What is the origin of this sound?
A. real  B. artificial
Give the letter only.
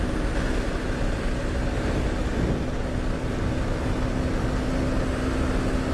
A